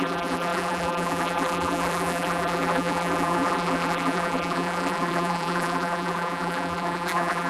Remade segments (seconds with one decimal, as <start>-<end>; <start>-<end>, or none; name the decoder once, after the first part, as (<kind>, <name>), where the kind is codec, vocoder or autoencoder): 0.0-7.5 (vocoder, BigVGAN v2)